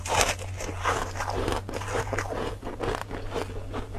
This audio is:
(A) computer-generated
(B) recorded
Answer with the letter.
B